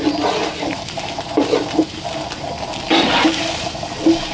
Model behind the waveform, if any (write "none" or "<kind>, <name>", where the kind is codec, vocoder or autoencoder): vocoder, BigVGAN v2